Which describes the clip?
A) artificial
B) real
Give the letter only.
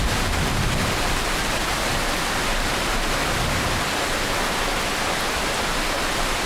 B